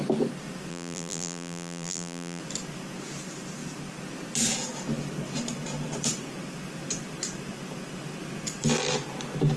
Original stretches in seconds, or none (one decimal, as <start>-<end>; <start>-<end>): 0.0-0.7; 2.4-9.6